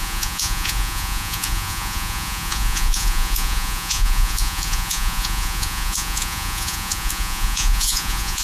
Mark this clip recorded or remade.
remade